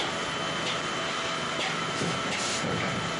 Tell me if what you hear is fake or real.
real